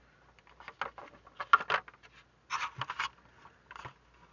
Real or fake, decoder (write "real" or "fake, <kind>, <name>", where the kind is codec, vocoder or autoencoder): real